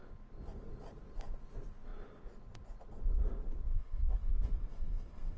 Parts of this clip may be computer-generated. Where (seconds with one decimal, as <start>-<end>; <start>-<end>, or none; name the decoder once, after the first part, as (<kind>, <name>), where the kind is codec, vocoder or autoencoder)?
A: 3.7-5.4 (codec, SNAC)